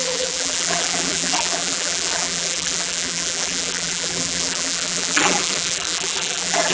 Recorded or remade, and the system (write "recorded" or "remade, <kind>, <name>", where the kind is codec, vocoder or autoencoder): remade, vocoder, BigVGAN v2